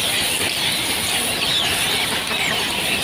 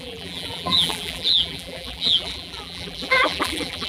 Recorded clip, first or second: first